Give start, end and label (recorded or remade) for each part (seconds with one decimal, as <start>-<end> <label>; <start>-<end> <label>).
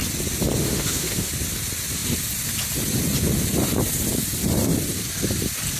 0.0-0.6 recorded; 0.6-1.3 remade; 1.3-5.8 recorded